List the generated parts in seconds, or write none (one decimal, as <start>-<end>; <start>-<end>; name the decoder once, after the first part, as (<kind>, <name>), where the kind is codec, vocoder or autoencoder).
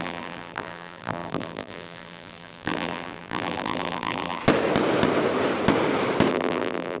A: 0.0-4.4 (vocoder, BigVGAN v2); 6.3-7.0